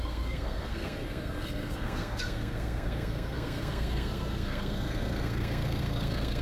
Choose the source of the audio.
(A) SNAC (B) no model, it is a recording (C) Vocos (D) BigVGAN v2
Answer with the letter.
A